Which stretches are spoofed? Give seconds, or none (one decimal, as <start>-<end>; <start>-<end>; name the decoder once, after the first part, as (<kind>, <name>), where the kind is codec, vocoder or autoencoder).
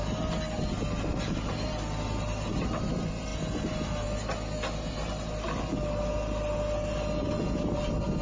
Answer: none